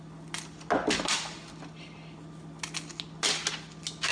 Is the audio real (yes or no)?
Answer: yes